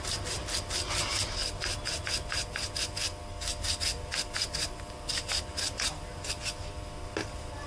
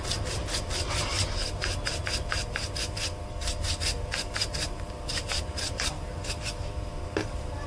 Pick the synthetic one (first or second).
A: second